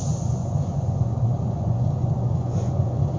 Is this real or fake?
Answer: fake